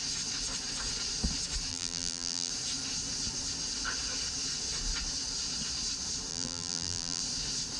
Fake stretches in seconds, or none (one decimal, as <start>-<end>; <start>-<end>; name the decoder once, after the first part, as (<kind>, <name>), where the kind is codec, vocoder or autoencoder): 1.7-2.5 (vocoder, BigVGAN v2); 6.3-7.2